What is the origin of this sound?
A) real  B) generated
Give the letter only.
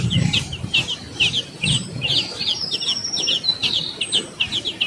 A